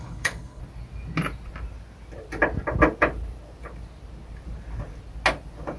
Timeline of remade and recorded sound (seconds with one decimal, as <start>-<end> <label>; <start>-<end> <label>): 0.0-0.6 remade; 0.6-5.8 recorded